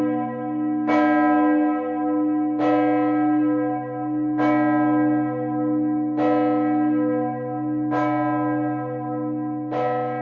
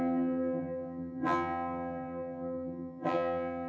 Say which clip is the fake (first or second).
second